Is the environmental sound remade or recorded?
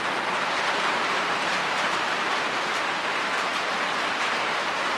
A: remade